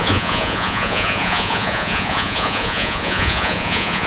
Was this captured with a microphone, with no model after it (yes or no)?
no